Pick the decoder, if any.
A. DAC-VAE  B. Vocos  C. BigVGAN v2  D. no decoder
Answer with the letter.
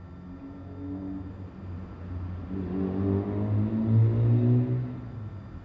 D